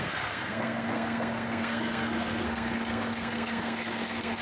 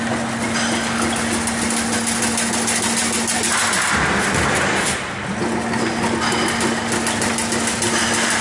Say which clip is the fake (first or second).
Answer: first